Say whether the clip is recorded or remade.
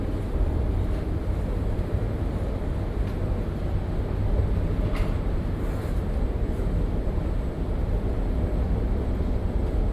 recorded